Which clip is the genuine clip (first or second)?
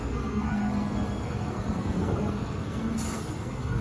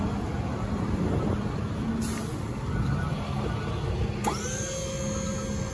second